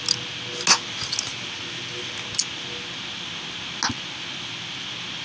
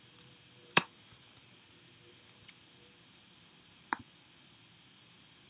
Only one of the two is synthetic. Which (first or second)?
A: second